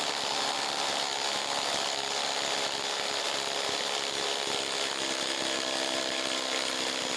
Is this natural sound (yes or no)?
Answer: yes